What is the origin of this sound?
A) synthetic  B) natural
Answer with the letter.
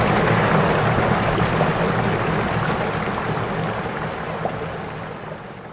B